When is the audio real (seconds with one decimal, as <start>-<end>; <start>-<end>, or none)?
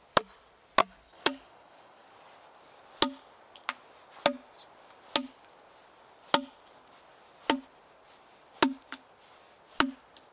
0.0-0.8; 2.1-10.3